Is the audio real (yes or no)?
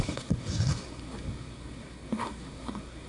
no